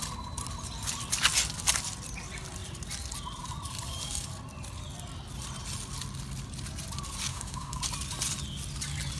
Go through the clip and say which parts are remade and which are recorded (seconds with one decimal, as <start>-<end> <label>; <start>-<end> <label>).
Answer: 0.0-7.3 recorded; 7.3-7.8 remade; 7.8-9.2 recorded

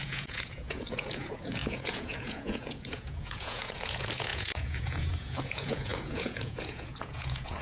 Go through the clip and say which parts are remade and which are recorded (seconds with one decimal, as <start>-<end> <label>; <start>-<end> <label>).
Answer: 0.0-7.6 remade

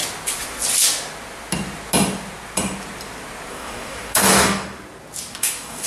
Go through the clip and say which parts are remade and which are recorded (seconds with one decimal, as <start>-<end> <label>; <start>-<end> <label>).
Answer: 0.0-3.5 recorded; 3.5-4.6 remade; 4.6-5.3 recorded; 5.3-5.9 remade

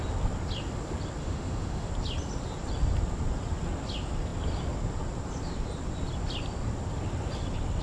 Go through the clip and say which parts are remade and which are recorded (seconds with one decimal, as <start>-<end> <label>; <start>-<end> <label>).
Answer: 0.0-1.2 recorded; 1.2-1.9 remade; 1.9-7.8 recorded

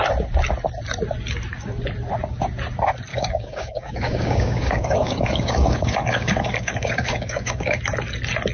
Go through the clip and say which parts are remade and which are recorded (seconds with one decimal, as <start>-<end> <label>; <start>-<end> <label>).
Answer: 0.0-3.1 recorded; 3.1-7.8 remade; 7.8-8.5 recorded